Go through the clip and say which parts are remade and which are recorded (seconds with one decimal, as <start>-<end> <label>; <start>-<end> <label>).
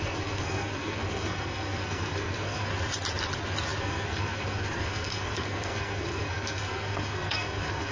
0.0-2.7 remade; 2.7-3.8 recorded; 3.8-7.9 remade